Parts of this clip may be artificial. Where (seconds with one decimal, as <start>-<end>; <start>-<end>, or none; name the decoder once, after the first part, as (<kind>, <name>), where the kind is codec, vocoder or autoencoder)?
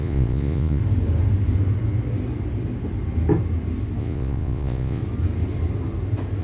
0.0-0.8 (vocoder, Vocos); 4.0-5.0